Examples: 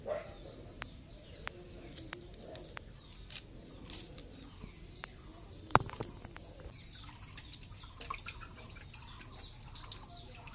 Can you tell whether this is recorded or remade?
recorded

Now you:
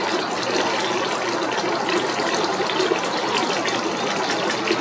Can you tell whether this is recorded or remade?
recorded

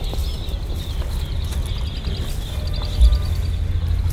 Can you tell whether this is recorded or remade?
recorded